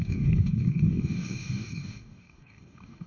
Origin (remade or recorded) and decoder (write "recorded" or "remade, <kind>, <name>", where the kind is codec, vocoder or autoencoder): remade, codec, DAC